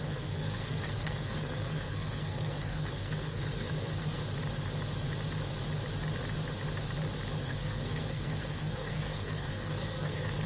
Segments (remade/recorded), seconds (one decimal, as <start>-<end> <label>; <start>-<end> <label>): 0.0-4.2 remade; 4.2-7.4 recorded; 7.4-10.5 remade